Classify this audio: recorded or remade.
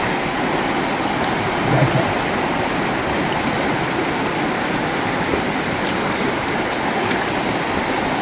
recorded